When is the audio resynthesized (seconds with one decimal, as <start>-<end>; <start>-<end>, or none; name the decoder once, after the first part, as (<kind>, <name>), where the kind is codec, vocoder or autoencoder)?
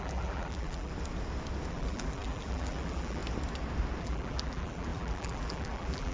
0.0-0.9 (vocoder, BigVGAN v2); 1.7-3.2; 4.0-6.1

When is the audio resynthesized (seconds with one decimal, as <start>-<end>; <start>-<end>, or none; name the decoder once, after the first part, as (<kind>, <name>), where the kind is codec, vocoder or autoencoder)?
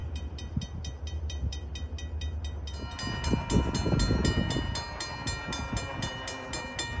none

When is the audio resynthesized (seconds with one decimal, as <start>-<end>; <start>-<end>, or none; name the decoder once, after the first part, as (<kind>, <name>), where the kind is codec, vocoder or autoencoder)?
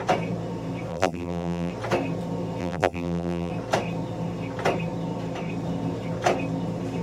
0.9-1.7 (vocoder, BigVGAN v2); 2.6-3.5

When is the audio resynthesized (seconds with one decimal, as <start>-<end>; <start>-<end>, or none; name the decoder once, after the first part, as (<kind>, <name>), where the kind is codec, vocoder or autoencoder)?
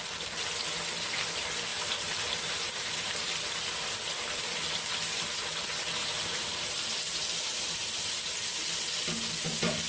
1.7-3.1 (vocoder, BigVGAN v2); 6.0-8.4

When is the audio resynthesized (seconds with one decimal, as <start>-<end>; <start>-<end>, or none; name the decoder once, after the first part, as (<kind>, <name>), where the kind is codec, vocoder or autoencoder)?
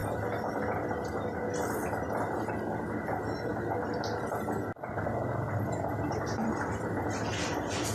0.0-0.6 (vocoder, BigVGAN v2)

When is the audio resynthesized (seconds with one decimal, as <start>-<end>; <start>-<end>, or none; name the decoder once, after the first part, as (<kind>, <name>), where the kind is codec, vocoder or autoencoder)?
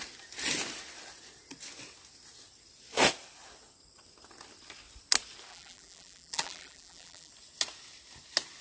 5.5-7.3 (vocoder, BigVGAN v2)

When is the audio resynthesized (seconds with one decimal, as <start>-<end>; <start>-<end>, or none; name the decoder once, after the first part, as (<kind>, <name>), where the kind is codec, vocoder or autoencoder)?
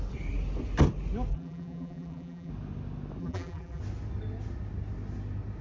1.3-2.5 (vocoder, BigVGAN v2); 3.2-3.8